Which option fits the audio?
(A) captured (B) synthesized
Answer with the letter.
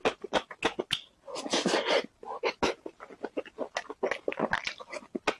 A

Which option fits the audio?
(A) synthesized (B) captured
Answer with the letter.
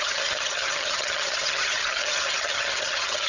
A